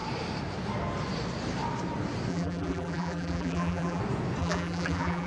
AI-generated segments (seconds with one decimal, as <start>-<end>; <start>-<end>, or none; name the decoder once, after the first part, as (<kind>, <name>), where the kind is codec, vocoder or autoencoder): 2.3-4.0 (vocoder, BigVGAN v2); 4.4-5.3